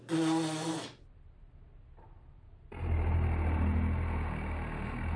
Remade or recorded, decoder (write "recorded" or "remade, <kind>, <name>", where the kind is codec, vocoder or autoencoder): recorded